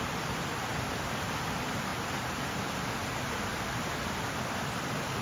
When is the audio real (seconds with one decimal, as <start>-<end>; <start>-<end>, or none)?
0.0-1.9; 2.6-5.2